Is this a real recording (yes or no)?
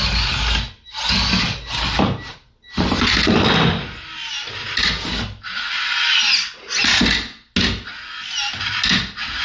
yes